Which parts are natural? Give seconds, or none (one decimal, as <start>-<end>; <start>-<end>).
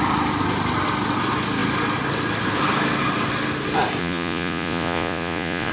0.0-4.0